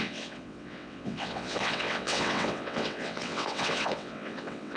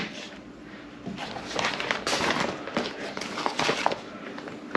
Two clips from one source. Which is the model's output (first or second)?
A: first